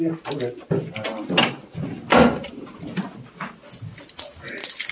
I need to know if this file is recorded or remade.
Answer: recorded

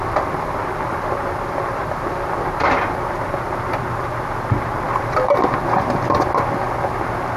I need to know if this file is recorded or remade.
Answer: recorded